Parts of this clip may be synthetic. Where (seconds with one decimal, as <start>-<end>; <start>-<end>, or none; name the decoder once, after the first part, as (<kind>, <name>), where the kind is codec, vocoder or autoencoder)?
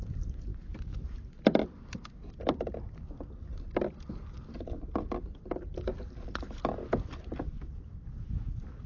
none